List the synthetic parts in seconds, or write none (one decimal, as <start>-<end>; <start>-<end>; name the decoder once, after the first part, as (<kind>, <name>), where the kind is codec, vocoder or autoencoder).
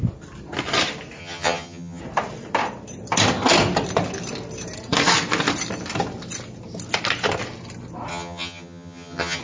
1.2-2.0 (vocoder, HiFi-GAN); 8.1-9.4